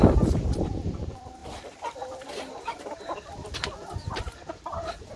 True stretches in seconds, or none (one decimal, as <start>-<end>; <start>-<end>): none